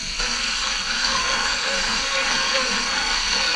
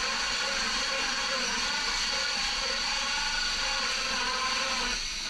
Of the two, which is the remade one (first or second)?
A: first